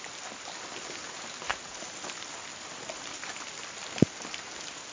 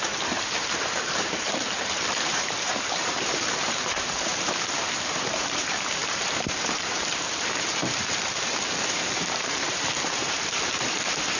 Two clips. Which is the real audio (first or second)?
first